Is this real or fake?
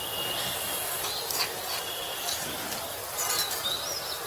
real